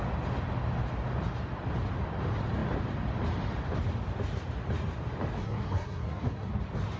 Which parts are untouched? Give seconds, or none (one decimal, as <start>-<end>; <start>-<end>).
0.0-5.4; 6.5-7.0